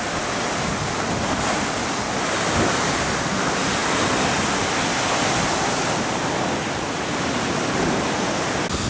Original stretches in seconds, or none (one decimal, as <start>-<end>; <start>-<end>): 0.0-8.9